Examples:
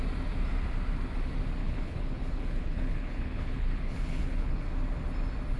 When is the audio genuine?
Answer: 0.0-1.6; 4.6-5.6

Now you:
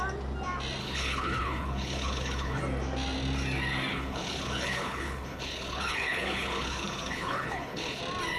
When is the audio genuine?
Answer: 0.0-0.8; 2.6-3.9; 8.0-8.4

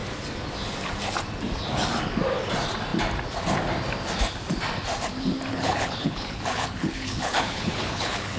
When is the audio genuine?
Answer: 0.0-5.5

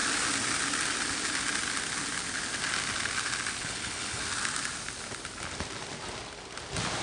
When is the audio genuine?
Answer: 0.0-3.6; 4.2-7.0